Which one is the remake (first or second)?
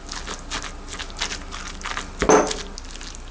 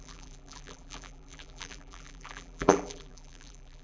second